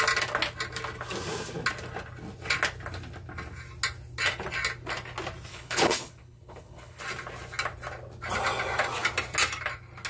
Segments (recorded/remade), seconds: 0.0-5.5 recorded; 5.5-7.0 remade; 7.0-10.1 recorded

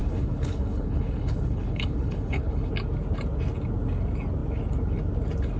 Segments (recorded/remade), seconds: 0.0-2.7 remade; 2.7-5.6 recorded

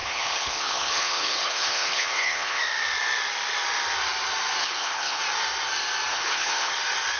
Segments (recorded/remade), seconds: 0.0-2.6 remade; 2.6-4.6 recorded; 4.6-5.2 remade; 5.2-6.1 recorded; 6.1-6.7 remade; 6.7-7.2 recorded

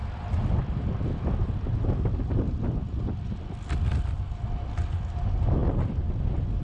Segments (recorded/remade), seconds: 0.0-6.6 recorded